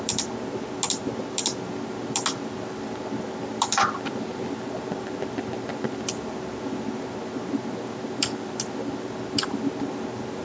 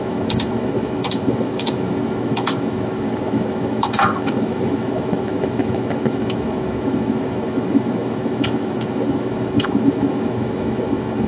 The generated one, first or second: second